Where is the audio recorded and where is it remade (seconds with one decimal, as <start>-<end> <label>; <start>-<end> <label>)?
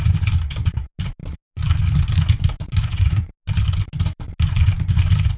0.0-2.8 recorded; 2.8-3.3 remade; 3.3-5.4 recorded